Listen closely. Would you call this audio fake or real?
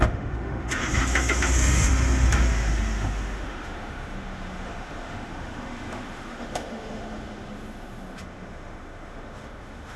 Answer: fake